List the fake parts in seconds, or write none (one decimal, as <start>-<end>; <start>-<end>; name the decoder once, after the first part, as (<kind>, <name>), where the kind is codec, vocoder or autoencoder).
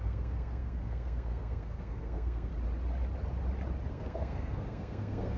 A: 0.0-2.5 (codec, SNAC); 3.9-5.4